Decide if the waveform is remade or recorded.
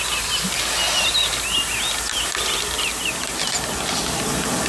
recorded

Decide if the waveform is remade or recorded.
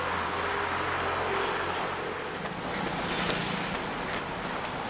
recorded